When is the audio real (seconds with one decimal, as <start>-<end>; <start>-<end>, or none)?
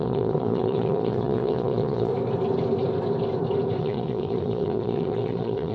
2.1-3.8